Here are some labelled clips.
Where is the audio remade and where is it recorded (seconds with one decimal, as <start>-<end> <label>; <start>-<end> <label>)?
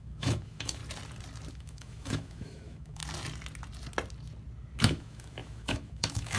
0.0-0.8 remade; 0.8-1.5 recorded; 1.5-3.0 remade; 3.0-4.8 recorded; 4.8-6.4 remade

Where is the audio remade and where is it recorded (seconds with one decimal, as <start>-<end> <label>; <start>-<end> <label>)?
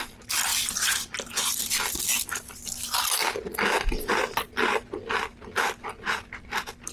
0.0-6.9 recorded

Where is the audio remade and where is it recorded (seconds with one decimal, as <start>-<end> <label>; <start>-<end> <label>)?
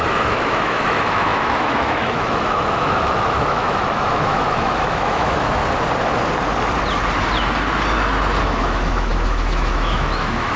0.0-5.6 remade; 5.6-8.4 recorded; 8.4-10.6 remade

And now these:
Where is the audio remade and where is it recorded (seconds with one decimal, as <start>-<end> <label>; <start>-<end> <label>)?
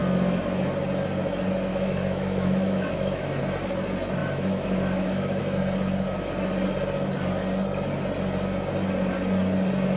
0.0-1.7 recorded; 1.7-3.4 remade; 3.4-4.2 recorded; 4.2-5.4 remade; 5.4-10.0 recorded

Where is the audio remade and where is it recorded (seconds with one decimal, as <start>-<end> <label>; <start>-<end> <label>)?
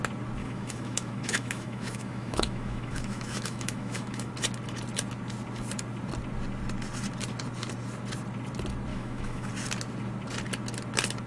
0.0-0.4 recorded; 0.4-4.3 remade; 4.3-8.9 recorded; 8.9-9.5 remade; 9.5-11.3 recorded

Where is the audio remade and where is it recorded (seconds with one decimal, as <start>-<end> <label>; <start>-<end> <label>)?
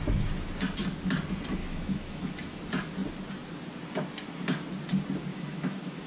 0.0-1.6 recorded; 1.6-2.6 remade; 2.6-5.3 recorded; 5.3-6.1 remade